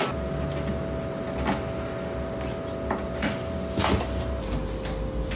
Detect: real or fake real